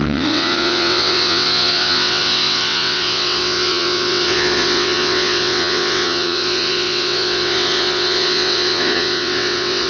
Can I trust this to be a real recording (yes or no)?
no